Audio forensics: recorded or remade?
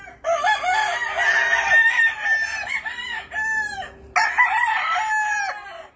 recorded